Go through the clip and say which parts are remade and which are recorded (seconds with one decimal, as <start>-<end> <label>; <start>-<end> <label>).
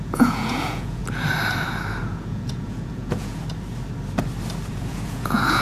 0.0-1.0 remade; 1.0-2.0 recorded; 2.0-3.4 remade; 3.4-4.7 recorded; 4.7-5.6 remade